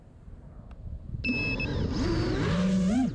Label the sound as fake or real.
real